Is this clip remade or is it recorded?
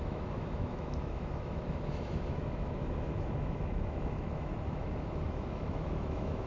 remade